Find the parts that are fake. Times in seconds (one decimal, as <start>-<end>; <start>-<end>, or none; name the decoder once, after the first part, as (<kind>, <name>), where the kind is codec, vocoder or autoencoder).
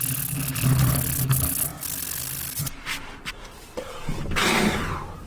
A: none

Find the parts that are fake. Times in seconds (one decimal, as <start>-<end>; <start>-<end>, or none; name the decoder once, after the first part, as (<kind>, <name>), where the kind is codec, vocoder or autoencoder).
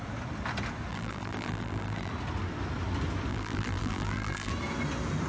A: 0.9-2.1 (vocoder, BigVGAN v2); 3.3-4.5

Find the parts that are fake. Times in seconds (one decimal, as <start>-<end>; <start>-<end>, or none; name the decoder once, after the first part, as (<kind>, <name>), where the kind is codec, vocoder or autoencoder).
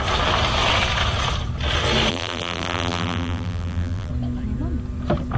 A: 2.1-4.1 (vocoder, BigVGAN v2)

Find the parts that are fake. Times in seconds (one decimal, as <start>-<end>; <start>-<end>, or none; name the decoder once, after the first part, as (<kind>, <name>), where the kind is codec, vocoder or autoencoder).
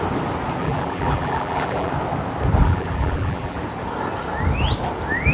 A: 0.6-1.9 (vocoder, BigVGAN v2); 2.6-3.6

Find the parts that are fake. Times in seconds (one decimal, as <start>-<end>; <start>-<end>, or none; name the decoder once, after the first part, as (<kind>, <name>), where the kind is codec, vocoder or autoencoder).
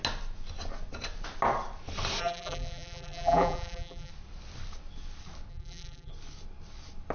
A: 2.2-4.1 (vocoder, BigVGAN v2); 5.5-6.1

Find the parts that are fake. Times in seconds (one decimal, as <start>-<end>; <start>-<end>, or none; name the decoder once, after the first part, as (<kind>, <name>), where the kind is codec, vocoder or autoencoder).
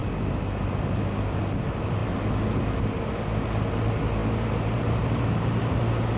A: 4.2-5.8 (vocoder, BigVGAN v2)